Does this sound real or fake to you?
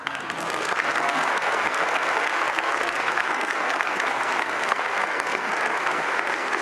fake